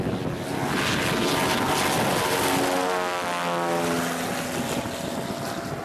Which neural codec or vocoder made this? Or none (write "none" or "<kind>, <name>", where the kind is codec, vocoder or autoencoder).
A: none